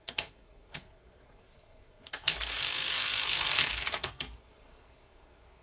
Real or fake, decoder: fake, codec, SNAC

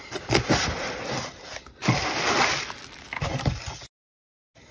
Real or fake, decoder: real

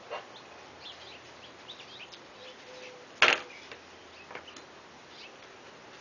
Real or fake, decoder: real